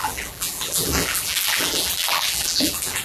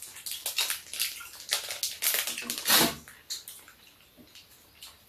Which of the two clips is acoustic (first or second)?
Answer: second